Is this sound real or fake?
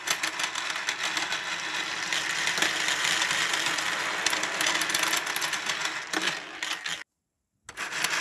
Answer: real